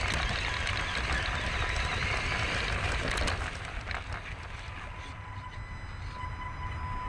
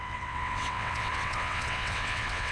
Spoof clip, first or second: second